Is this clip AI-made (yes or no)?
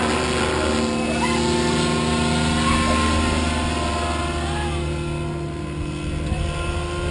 no